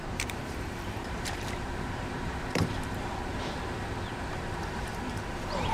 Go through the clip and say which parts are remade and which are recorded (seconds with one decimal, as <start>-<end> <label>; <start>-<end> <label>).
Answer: 0.0-3.3 remade; 3.3-4.3 recorded; 4.3-5.7 remade